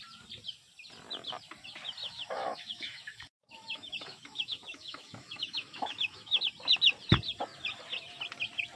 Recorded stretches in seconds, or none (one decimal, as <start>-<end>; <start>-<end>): 0.0-2.0; 6.4-8.8